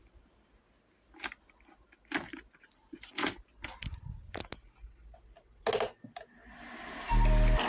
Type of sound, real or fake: real